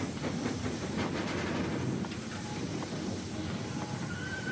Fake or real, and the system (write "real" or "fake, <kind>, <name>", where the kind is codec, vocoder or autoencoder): real